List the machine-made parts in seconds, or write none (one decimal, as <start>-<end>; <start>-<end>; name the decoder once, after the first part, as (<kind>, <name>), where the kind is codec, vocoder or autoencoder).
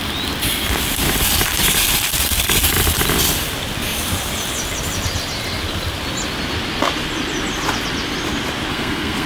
8.7-9.3 (codec, SNAC)